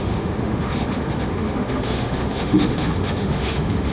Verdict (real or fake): fake